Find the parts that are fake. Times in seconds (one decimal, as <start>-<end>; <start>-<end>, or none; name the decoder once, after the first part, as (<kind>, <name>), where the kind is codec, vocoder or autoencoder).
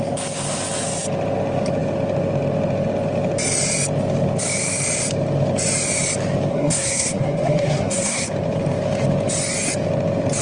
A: 6.5-8.3 (codec, SNAC)